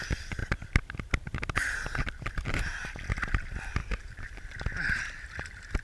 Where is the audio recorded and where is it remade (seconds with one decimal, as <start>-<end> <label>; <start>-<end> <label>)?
0.0-5.8 recorded

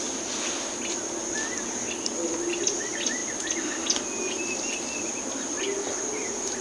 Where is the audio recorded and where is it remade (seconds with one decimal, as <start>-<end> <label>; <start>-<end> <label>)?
0.0-6.6 recorded

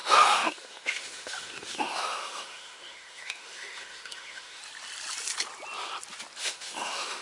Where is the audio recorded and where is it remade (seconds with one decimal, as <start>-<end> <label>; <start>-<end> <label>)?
0.0-4.6 remade; 4.6-6.4 recorded; 6.4-7.2 remade

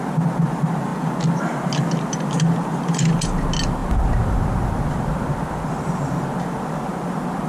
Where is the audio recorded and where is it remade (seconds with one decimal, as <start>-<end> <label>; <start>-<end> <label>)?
0.0-7.5 recorded

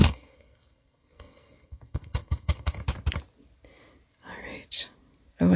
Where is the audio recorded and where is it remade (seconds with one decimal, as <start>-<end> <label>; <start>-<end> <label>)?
0.0-2.8 remade; 2.8-5.6 recorded

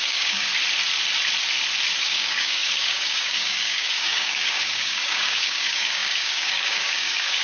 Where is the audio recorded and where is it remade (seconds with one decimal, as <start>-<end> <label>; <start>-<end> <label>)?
0.0-0.5 remade; 0.5-2.0 recorded; 2.0-7.4 remade

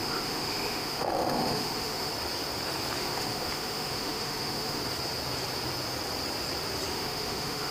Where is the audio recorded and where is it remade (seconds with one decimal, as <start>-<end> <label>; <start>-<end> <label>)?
0.0-2.1 remade; 2.1-3.0 recorded; 3.0-4.8 remade; 4.8-6.9 recorded; 6.9-7.7 remade